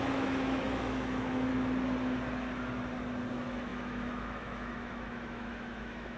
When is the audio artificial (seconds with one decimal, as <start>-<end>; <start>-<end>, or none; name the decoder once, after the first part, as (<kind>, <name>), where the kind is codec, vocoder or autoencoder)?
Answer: 0.0-1.5 (autoencoder, DAC-VAE); 3.3-6.2